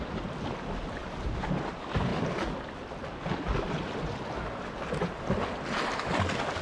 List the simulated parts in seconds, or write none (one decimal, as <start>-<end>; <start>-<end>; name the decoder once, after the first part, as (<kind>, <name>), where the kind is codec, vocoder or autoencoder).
none

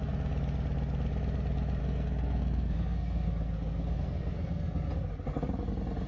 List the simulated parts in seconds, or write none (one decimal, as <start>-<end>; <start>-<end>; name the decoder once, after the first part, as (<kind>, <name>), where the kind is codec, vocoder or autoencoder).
1.8-4.9 (codec, SNAC)

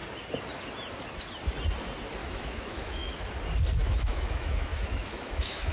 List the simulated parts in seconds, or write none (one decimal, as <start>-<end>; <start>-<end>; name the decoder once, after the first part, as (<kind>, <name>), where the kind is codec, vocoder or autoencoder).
2.2-3.3 (autoencoder, DAC-VAE); 3.8-5.7

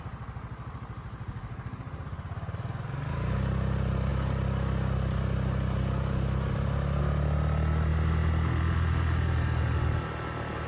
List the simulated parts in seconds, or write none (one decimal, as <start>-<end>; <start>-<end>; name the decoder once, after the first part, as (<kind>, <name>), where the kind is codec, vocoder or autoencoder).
none

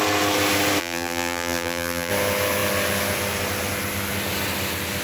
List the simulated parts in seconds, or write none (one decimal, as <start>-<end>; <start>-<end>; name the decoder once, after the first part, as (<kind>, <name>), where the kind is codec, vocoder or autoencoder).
0.8-2.1 (vocoder, BigVGAN v2)

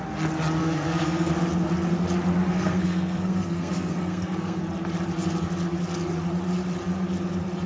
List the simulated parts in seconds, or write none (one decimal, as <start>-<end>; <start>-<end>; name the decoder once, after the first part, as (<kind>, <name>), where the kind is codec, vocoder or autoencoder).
0.6-1.3 (codec, SNAC); 2.5-4.6

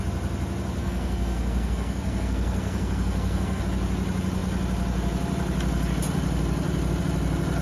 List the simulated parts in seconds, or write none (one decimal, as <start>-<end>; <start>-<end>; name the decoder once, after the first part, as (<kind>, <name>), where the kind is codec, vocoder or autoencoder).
0.8-3.6 (codec, SNAC)